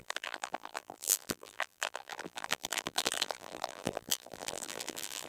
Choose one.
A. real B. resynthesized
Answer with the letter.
B